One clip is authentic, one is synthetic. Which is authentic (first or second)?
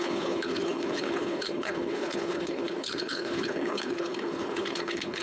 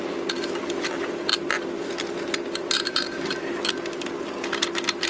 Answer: second